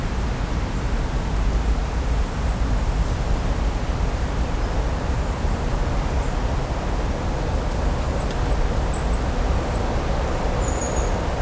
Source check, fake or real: real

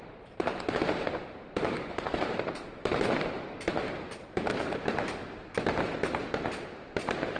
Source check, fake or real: fake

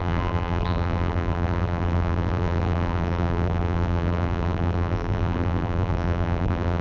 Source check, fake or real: fake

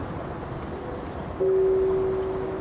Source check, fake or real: real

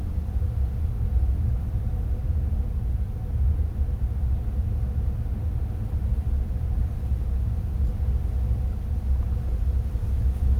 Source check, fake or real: real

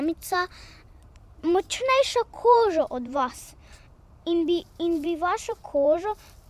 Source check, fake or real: fake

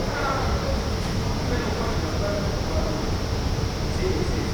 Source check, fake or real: fake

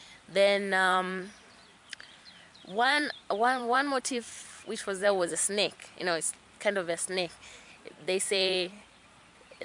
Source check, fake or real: fake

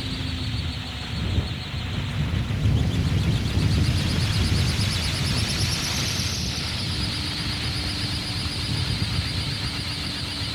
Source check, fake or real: real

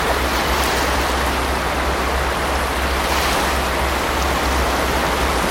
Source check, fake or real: real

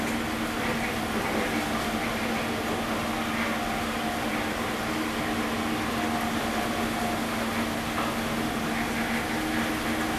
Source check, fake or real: real